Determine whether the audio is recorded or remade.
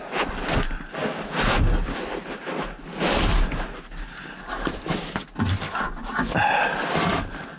recorded